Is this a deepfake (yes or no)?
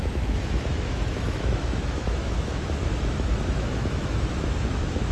yes